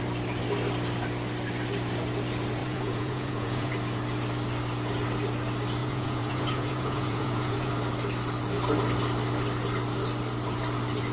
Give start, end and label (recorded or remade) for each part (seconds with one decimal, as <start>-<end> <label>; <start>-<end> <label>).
0.0-2.6 recorded; 2.6-3.7 remade; 3.7-5.8 recorded; 5.8-7.7 remade; 7.7-11.1 recorded